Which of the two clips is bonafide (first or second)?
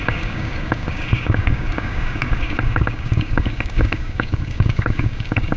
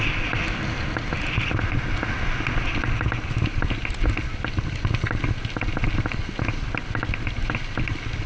second